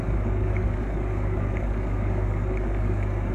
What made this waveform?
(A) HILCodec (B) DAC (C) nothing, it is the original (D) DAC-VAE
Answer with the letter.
B